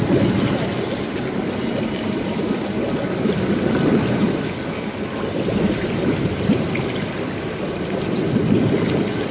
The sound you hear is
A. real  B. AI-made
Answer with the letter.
A